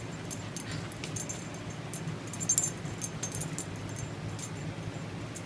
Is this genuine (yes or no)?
yes